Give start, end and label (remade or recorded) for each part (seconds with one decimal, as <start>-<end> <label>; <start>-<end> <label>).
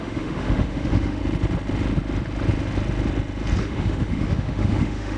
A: 0.0-1.2 remade; 1.2-3.6 recorded; 3.6-5.2 remade